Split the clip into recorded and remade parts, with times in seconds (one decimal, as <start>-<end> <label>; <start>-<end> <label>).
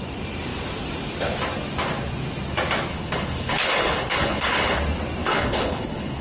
0.0-2.9 recorded; 2.9-4.8 remade; 4.8-5.2 recorded; 5.2-6.2 remade